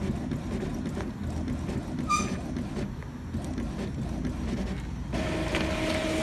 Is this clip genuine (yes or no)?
yes